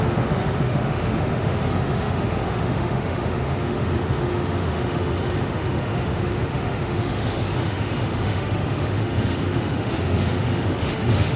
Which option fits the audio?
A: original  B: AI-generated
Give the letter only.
B